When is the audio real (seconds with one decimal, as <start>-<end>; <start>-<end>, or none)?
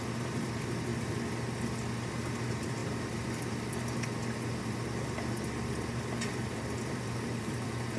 0.0-2.8; 3.5-6.3